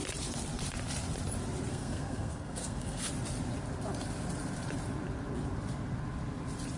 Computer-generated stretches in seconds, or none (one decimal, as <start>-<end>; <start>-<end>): 1.7-3.0